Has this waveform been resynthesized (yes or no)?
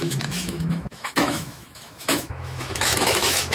yes